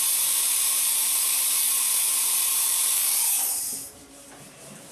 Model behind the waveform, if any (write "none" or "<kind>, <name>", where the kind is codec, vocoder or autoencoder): vocoder, BigVGAN v2